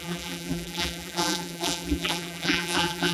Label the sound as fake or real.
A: fake